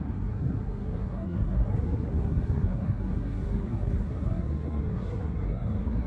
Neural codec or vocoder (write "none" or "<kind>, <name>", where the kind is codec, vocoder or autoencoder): codec, SNAC